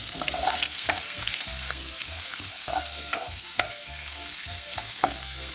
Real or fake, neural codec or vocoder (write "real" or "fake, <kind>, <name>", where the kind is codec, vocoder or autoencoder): fake, codec, SNAC